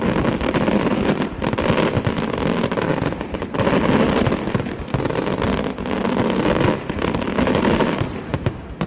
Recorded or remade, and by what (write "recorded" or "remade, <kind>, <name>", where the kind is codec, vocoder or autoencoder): recorded